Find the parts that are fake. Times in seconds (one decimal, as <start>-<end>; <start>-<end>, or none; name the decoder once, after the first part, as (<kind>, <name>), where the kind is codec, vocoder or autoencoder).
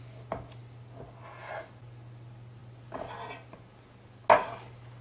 none